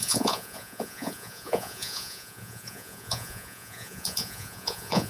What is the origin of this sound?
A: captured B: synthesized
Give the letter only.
B